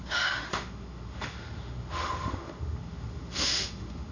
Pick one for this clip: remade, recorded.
remade